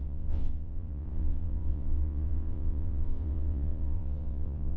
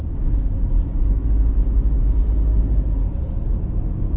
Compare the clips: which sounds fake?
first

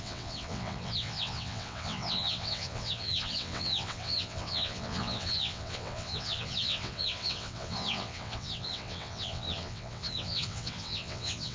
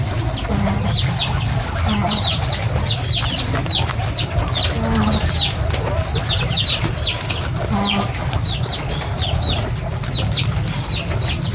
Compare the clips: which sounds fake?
first